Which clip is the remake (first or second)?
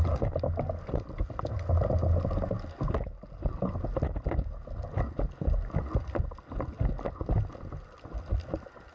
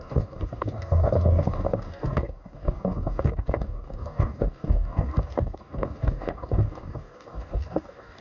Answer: second